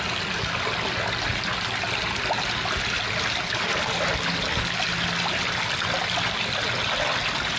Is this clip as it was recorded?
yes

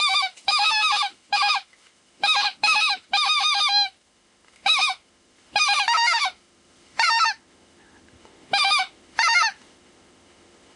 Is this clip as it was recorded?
no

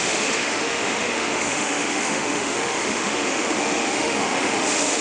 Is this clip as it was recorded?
no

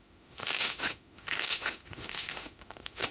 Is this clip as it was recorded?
no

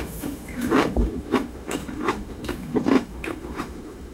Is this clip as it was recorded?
no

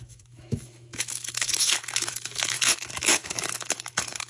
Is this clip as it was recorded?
no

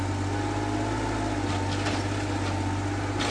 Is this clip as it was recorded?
yes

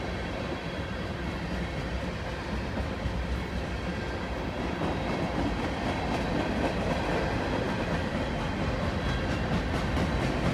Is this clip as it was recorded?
yes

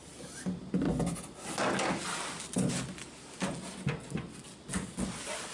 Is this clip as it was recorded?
yes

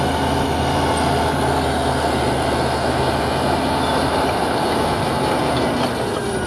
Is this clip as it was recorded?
yes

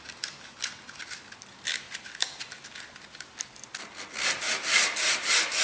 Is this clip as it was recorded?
yes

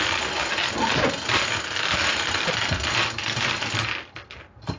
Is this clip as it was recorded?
yes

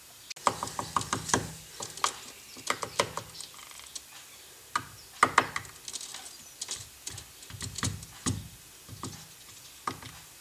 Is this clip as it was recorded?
yes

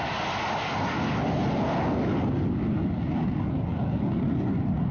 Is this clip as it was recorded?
yes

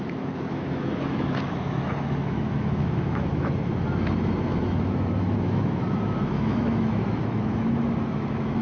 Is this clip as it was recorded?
no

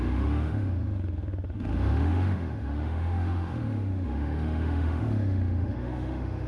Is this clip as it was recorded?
no